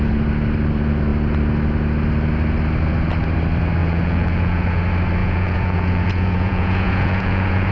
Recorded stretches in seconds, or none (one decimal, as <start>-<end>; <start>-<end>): 0.0-3.8; 4.8-5.2